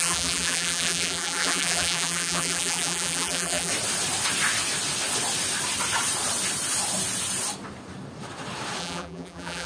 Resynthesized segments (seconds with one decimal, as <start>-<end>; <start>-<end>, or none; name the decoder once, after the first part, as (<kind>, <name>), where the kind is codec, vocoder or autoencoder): 0.0-3.7 (vocoder, BigVGAN v2); 8.8-9.7